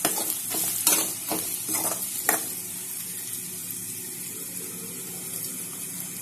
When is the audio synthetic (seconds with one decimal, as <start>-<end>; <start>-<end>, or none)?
none